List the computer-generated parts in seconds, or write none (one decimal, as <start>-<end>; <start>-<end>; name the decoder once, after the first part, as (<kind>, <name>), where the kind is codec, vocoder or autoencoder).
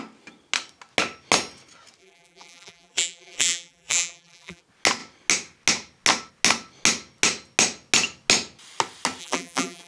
2.0-4.6 (vocoder, BigVGAN v2); 9.2-9.9